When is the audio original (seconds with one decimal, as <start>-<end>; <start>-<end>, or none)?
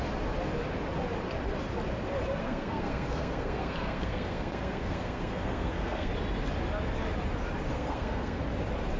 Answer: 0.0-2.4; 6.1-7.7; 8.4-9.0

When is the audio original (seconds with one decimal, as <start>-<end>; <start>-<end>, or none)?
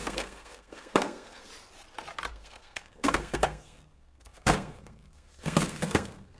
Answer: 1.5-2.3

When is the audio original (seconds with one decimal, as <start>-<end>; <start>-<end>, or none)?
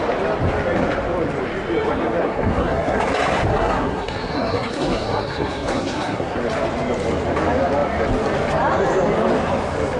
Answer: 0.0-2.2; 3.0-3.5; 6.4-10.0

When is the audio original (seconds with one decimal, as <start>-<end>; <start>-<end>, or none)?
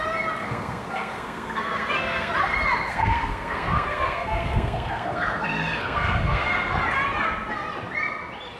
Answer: 0.0-0.4; 2.3-2.9; 6.5-8.6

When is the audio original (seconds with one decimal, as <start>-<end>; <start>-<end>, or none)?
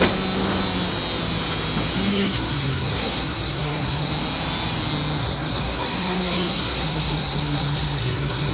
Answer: 0.0-2.1; 4.1-5.2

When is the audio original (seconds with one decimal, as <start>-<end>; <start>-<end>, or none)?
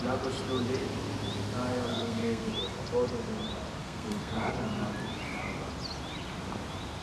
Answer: 0.0-1.9; 2.5-3.8; 4.5-7.0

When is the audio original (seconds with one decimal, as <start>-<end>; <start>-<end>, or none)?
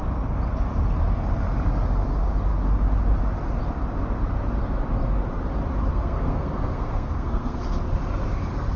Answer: 0.0-5.9; 7.6-8.8